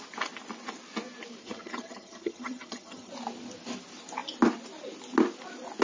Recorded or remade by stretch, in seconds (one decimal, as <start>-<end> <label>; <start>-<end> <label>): 0.0-1.4 recorded; 1.4-3.1 remade; 3.1-5.8 recorded